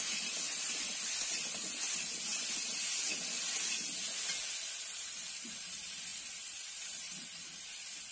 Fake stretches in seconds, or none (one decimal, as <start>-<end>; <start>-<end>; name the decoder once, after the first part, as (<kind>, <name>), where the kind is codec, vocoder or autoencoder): 0.0-2.3 (vocoder, BigVGAN v2); 4.8-8.1